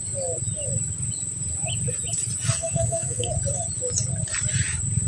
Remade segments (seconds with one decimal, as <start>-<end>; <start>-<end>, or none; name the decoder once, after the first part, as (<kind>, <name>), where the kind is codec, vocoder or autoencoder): 2.5-3.3 (codec, SNAC)